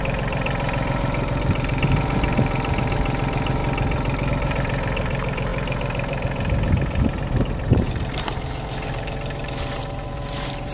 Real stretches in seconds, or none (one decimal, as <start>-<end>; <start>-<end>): 3.6-4.3